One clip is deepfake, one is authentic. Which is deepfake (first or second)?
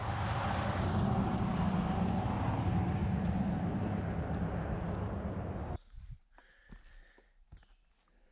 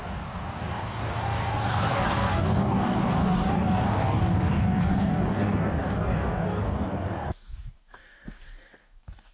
second